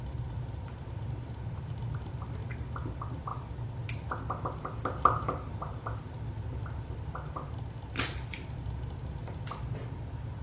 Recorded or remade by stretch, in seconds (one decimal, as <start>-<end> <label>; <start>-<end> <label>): 0.0-10.4 recorded